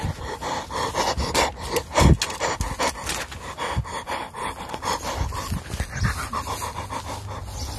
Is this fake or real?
real